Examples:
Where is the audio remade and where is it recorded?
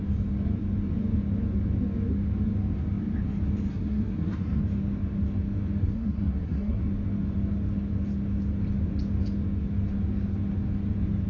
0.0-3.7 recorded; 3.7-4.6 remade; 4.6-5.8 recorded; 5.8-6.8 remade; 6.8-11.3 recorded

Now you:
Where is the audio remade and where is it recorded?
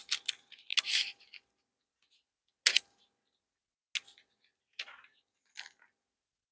0.0-6.5 recorded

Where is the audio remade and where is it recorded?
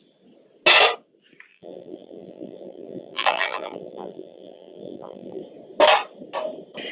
0.0-1.5 recorded; 1.5-5.4 remade; 5.4-6.9 recorded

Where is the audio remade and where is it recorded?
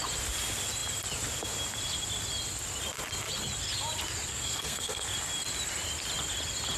0.0-4.3 recorded; 4.3-5.0 remade; 5.0-6.8 recorded